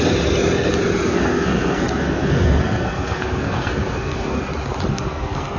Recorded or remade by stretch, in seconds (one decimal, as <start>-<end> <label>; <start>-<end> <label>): 0.0-1.1 recorded; 1.1-4.4 remade; 4.4-4.9 recorded; 4.9-5.6 remade